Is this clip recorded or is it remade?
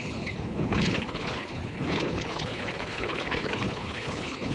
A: remade